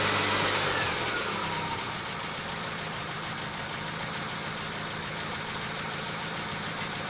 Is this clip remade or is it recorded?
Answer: recorded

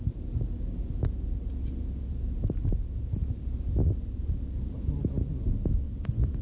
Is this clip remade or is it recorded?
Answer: recorded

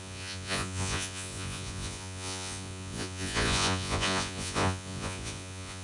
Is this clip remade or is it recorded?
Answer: remade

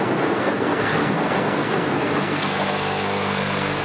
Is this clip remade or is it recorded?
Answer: remade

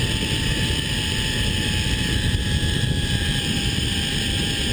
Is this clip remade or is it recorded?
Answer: remade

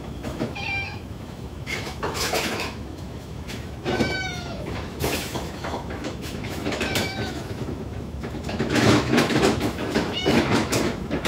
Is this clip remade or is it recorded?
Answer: remade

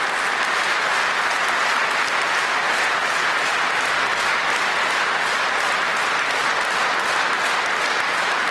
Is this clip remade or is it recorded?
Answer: recorded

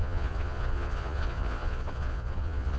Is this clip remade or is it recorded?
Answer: remade